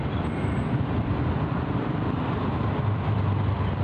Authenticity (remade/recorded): remade